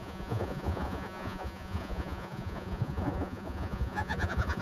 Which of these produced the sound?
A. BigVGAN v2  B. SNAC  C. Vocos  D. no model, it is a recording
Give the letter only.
C